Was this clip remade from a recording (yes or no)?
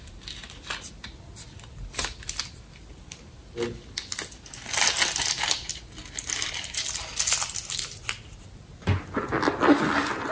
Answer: no